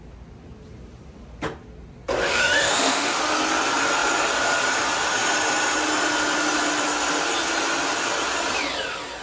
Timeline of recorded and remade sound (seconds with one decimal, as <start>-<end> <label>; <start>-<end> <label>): 0.0-2.2 recorded; 2.2-3.2 remade; 3.2-9.2 recorded